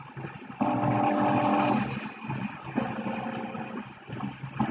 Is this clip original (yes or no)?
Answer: yes